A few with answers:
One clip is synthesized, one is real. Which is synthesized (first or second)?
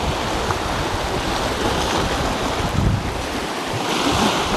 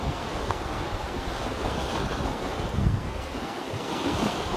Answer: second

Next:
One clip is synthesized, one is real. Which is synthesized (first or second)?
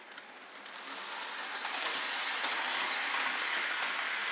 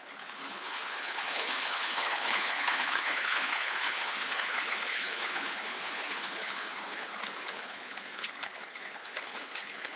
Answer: second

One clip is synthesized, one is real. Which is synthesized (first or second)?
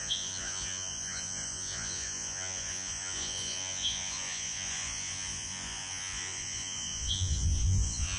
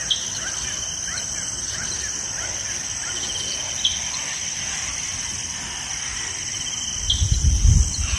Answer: first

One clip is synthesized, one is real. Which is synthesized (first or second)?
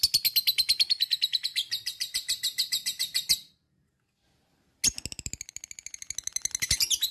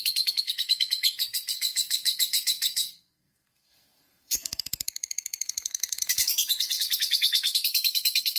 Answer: second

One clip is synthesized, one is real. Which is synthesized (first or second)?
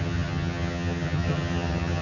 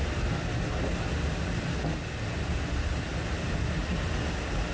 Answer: first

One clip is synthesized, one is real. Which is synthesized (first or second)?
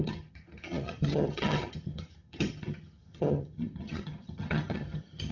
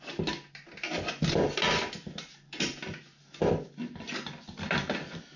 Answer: first